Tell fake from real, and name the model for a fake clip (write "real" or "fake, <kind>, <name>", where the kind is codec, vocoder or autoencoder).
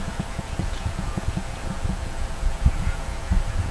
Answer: fake, vocoder, Vocos